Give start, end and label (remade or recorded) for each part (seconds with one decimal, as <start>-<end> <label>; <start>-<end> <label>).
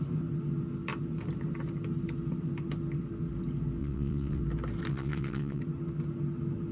0.0-3.8 recorded; 3.8-4.4 remade; 4.4-4.9 recorded; 4.9-5.6 remade; 5.6-6.7 recorded